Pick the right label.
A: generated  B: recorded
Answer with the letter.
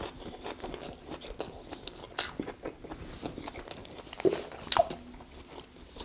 B